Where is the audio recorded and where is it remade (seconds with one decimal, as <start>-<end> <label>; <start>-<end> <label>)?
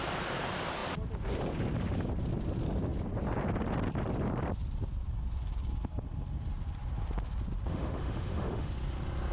0.0-7.7 recorded; 7.7-8.7 remade; 8.7-9.3 recorded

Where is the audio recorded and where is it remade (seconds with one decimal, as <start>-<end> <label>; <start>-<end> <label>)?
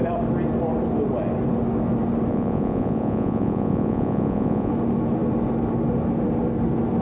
0.0-2.3 recorded; 2.3-4.7 remade; 4.7-7.0 recorded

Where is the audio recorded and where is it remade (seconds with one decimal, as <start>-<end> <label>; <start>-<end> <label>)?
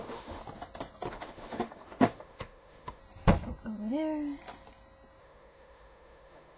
0.0-0.4 remade; 0.4-1.1 recorded; 1.1-3.0 remade; 3.0-5.2 recorded; 5.2-6.6 remade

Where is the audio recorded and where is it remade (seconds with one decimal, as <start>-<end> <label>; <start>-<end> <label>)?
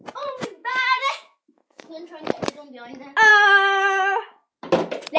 0.0-0.6 recorded; 0.6-1.9 remade; 1.9-3.3 recorded; 3.3-4.5 remade; 4.5-5.2 recorded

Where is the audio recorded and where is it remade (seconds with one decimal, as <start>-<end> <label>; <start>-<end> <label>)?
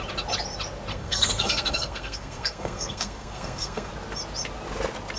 0.0-0.9 recorded; 0.9-3.9 remade; 3.9-5.2 recorded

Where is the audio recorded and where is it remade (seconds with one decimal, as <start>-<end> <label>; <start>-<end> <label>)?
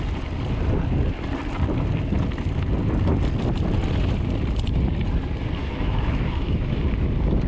0.0-5.6 recorded; 5.6-6.8 remade; 6.8-7.5 recorded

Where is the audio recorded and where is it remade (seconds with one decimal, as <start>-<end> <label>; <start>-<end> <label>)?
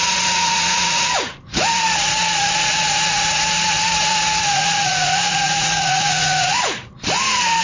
0.0-7.6 remade